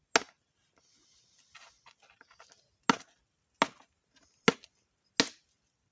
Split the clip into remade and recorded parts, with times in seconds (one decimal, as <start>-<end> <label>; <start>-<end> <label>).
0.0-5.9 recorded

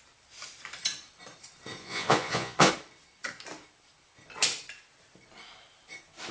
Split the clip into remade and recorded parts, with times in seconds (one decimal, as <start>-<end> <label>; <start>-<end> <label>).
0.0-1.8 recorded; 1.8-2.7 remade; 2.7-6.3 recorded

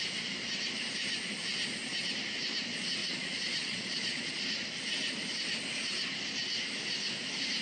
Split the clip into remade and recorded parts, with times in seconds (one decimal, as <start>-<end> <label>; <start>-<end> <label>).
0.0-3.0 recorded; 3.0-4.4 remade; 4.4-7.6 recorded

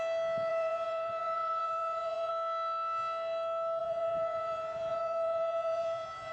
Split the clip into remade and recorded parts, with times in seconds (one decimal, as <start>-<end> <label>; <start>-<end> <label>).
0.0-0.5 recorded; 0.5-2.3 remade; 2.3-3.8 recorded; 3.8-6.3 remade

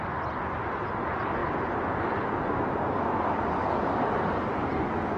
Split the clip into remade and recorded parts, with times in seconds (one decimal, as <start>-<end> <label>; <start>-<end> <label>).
0.0-5.2 recorded

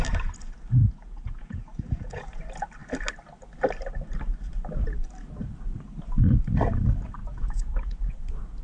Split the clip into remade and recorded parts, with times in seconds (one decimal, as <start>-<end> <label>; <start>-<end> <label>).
0.0-0.8 recorded; 0.8-2.2 remade; 2.2-7.2 recorded; 7.2-8.2 remade; 8.2-8.6 recorded

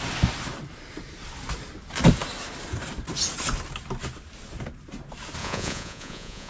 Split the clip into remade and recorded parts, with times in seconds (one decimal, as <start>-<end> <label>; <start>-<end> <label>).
0.0-5.4 recorded; 5.4-6.5 remade